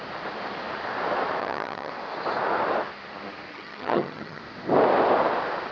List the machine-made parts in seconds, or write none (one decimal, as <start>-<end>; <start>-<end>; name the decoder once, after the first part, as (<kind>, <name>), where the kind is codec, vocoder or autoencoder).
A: 1.4-1.9 (vocoder, HiFi-GAN); 3.5-4.4